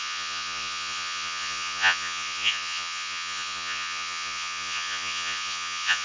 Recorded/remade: remade